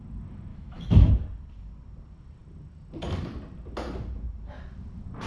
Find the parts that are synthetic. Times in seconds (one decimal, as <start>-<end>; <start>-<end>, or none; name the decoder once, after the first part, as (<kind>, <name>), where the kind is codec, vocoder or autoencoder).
0.5-1.1 (autoencoder, DAC-VAE)

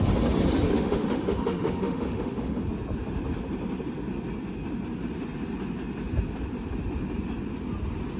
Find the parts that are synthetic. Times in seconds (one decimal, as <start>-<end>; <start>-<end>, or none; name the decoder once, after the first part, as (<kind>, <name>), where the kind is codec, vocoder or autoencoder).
0.7-2.6 (autoencoder, DAC-VAE)

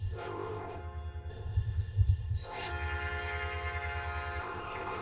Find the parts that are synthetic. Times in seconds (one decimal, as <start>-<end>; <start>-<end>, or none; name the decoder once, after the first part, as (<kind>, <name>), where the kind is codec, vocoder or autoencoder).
0.0-0.8 (codec, ZipCodec); 1.3-2.7; 4.4-5.0

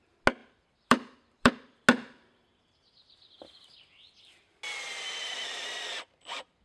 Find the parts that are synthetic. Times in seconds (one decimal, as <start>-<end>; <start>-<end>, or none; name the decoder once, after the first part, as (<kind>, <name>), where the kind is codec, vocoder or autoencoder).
0.4-1.5 (vocoder, BigVGAN v2)

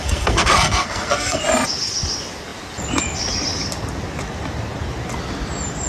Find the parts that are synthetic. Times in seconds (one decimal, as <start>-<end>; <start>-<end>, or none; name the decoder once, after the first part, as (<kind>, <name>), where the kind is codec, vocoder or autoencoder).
0.0-1.4 (codec, SNAC)

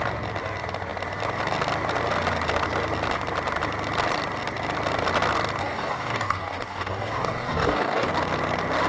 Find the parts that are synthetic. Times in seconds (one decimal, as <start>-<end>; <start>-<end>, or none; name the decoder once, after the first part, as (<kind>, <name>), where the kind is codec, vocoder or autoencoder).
5.6-8.1 (codec, DAC)

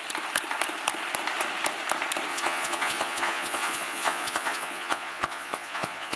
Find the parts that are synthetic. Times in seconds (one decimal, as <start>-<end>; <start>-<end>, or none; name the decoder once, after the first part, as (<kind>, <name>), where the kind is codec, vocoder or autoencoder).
2.3-6.2 (vocoder, Vocos)